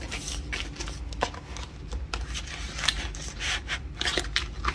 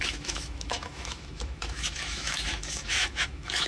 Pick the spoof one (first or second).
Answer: second